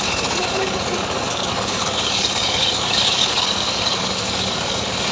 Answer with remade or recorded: remade